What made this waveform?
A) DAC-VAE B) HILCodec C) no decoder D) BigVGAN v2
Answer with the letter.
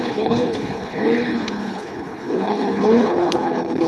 B